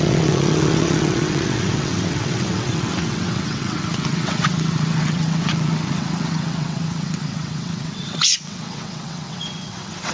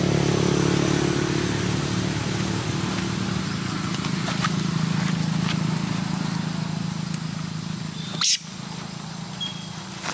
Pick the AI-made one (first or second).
first